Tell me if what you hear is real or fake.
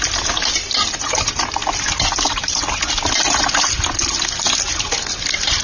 real